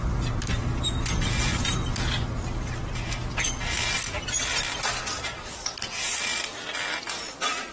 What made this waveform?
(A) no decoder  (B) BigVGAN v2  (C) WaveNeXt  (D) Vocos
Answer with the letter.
A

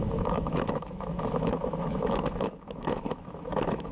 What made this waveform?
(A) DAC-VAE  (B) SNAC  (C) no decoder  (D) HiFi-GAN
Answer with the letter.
A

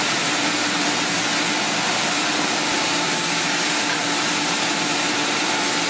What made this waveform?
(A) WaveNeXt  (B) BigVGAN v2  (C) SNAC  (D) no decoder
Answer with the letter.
D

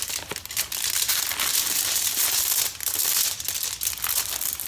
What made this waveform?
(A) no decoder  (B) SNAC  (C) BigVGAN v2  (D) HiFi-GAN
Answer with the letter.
A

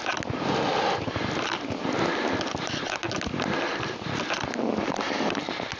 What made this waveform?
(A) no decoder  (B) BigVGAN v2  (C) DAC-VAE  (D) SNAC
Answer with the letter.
A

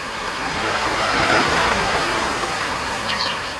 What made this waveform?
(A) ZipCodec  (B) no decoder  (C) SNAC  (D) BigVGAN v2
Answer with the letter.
C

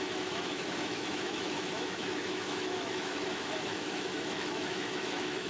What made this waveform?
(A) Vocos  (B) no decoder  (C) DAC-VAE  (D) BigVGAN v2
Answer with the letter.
C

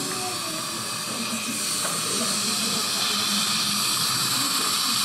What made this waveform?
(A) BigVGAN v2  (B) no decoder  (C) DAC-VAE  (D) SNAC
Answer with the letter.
B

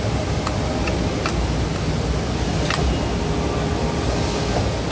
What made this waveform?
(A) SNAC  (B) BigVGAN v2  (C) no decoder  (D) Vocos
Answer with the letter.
C